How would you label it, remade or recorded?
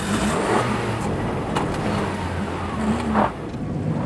recorded